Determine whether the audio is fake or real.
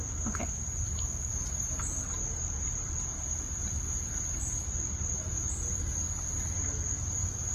real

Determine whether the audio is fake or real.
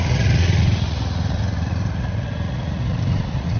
fake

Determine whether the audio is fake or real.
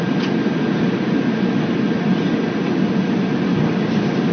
real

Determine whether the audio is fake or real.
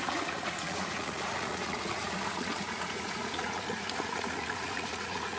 fake